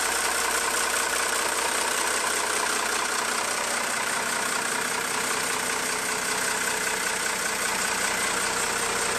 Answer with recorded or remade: recorded